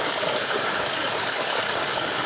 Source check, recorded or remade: remade